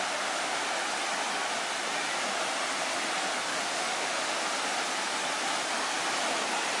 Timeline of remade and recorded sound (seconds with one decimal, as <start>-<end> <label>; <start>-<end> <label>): 0.0-3.5 recorded; 3.5-4.4 remade; 4.4-6.8 recorded